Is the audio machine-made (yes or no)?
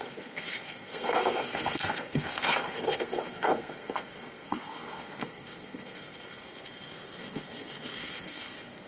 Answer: yes